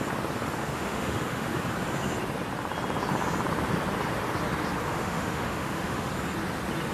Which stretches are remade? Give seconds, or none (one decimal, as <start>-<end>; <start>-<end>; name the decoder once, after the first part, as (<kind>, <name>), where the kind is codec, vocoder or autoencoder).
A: 0.6-1.6 (autoencoder, DAC-VAE); 4.9-6.1